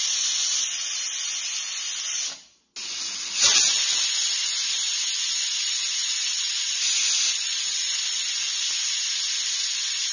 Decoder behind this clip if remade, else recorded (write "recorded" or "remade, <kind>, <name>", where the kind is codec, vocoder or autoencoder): recorded